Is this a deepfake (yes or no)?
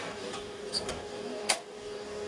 yes